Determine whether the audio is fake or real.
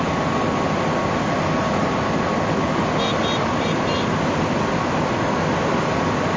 real